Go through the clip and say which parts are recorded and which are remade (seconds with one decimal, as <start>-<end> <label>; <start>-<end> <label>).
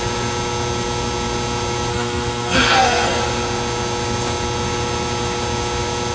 0.0-1.9 recorded; 1.9-3.2 remade; 3.2-6.1 recorded